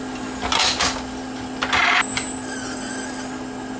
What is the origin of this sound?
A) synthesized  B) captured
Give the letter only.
B